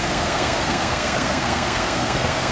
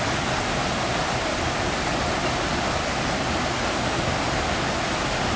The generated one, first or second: first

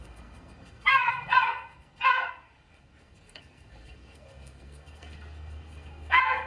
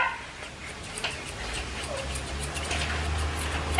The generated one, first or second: first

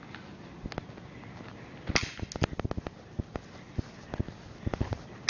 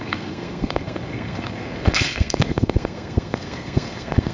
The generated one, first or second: second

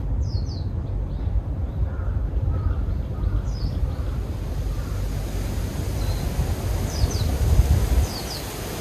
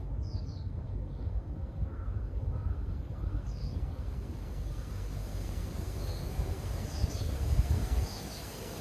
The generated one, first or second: second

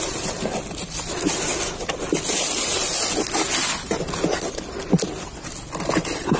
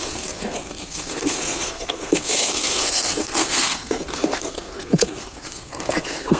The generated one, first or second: second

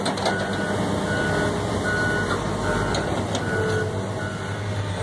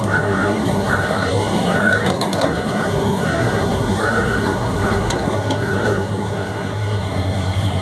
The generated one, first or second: second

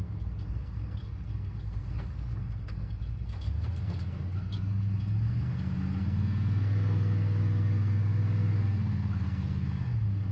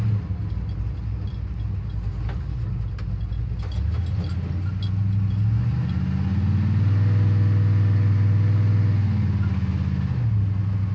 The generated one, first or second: first